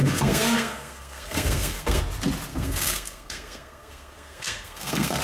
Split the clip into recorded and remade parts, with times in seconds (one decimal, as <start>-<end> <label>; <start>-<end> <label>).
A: 0.0-2.0 remade; 2.0-2.5 recorded; 2.5-5.2 remade